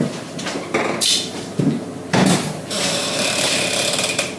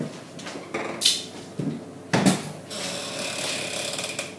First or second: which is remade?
first